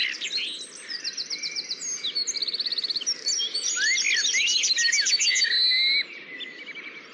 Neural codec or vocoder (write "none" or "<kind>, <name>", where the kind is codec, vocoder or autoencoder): none